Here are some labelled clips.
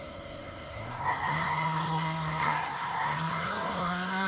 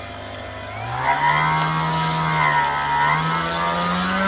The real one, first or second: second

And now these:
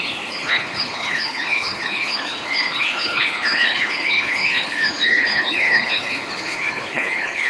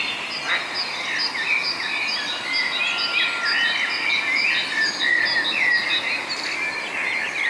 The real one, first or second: second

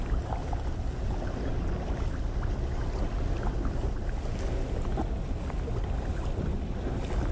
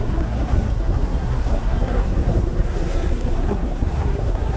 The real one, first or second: first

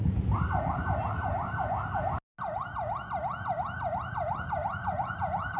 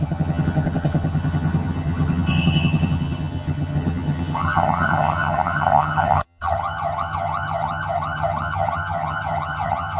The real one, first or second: first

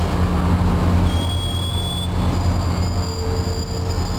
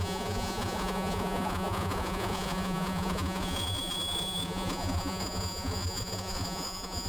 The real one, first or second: first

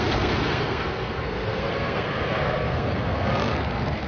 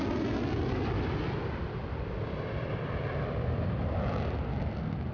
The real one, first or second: second